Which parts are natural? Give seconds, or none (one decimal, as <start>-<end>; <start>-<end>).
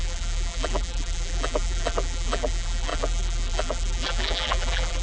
none